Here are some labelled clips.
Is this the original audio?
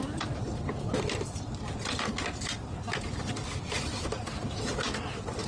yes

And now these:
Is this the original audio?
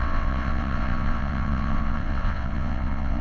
no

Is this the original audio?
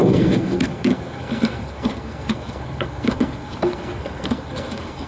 no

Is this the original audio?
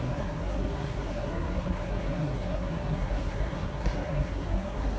no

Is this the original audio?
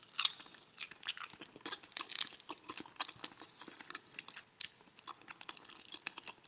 yes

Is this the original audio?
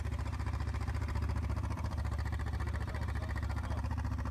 no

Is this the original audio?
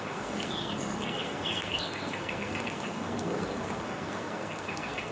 no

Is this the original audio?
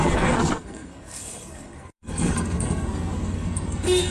no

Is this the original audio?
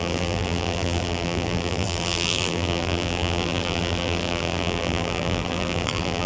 no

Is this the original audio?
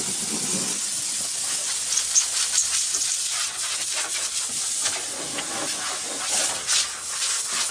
yes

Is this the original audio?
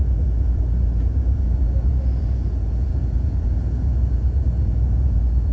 no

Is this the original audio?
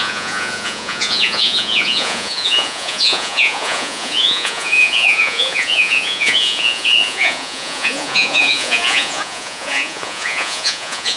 no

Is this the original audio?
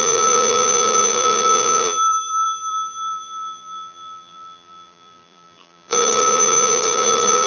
no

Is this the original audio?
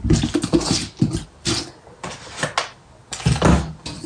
yes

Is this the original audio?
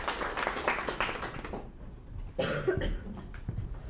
yes